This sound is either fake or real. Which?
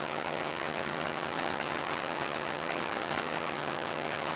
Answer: fake